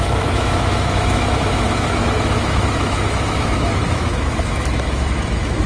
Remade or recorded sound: remade